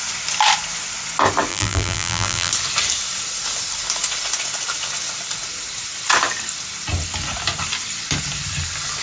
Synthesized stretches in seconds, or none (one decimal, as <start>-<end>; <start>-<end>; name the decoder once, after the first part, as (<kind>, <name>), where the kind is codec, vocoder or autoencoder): 1.5-2.5 (vocoder, BigVGAN v2)